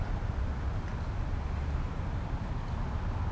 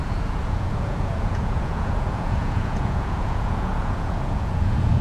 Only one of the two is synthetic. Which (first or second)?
second